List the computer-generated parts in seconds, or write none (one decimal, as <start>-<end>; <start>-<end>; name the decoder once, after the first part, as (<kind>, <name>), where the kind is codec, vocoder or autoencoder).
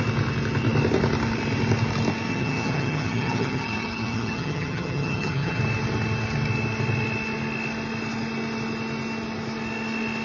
2.3-5.6 (vocoder, HiFi-GAN)